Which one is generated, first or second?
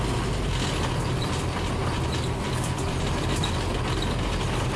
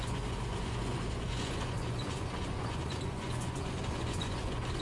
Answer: second